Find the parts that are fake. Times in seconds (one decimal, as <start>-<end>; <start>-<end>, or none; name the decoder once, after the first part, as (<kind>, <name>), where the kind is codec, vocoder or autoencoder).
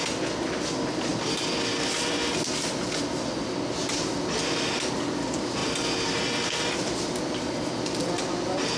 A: none